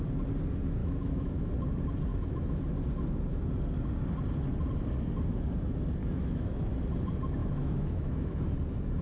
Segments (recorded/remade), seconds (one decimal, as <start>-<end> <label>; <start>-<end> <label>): 0.0-0.8 recorded; 0.8-1.5 remade; 1.5-2.1 recorded; 2.1-2.6 remade; 2.6-6.0 recorded; 6.0-6.7 remade; 6.7-7.4 recorded; 7.4-8.5 remade; 8.5-9.0 recorded